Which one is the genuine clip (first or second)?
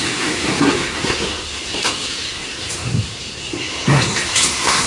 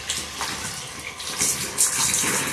second